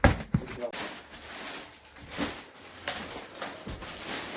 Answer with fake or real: real